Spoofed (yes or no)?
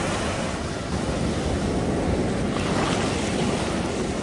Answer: no